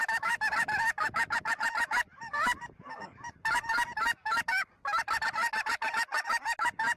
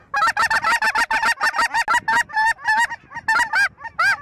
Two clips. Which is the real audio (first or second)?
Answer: second